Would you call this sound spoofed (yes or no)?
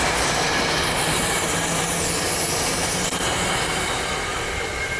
no